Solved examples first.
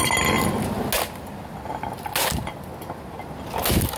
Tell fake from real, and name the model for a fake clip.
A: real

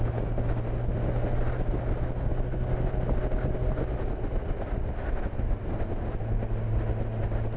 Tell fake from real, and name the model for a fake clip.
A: real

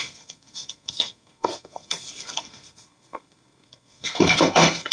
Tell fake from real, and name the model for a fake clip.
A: fake, codec, SNAC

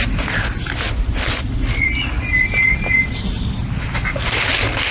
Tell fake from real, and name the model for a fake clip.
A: real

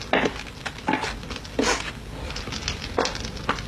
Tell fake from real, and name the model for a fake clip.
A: real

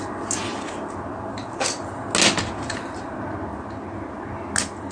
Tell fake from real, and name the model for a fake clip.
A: real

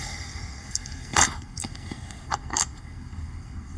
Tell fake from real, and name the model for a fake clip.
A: fake, codec, SNAC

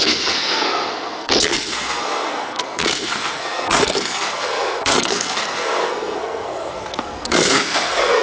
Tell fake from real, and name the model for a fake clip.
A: fake, codec, SNAC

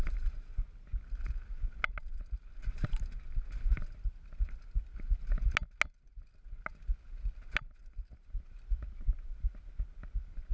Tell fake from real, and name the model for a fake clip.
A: real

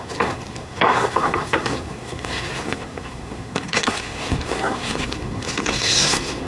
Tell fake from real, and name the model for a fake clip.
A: fake, codec, SNAC